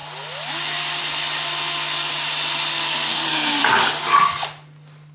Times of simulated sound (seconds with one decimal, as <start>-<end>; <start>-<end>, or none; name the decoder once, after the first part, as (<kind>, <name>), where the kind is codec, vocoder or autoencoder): 3.1-3.6 (codec, SNAC)